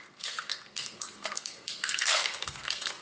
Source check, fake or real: fake